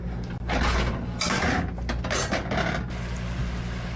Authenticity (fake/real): real